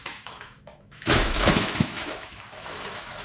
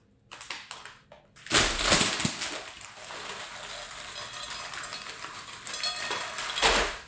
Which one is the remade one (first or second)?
first